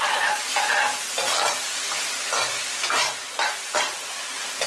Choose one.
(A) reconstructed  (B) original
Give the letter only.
B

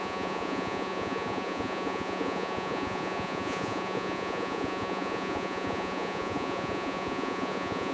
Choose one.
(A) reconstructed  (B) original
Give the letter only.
A